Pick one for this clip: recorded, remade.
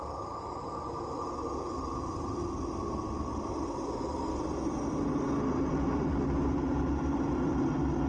recorded